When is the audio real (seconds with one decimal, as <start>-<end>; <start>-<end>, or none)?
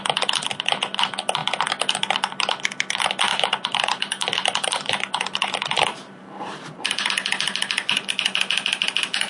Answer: 0.0-3.3; 7.1-9.3